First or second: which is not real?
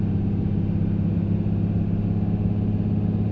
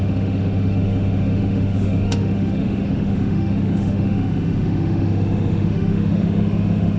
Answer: second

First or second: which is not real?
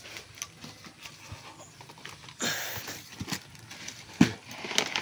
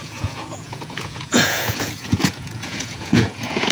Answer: second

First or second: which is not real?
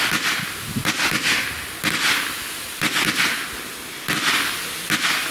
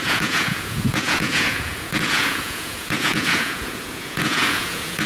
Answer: second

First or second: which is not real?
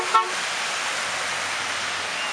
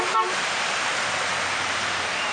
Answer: second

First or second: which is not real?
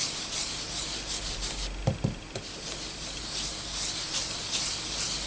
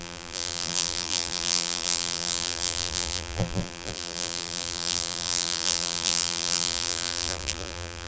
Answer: second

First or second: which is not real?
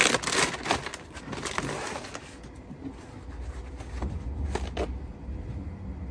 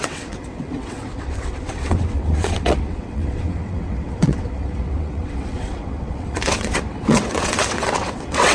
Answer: second